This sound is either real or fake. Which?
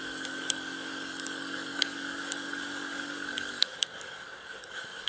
fake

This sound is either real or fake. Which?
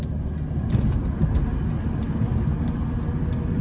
real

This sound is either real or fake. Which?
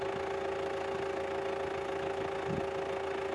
real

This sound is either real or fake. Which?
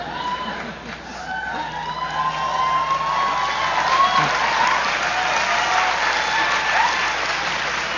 real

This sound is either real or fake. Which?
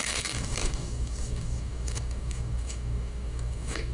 fake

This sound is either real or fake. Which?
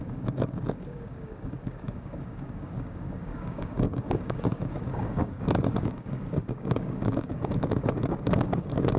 fake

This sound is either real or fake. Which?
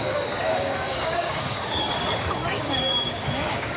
fake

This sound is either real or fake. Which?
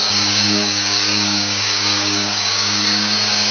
fake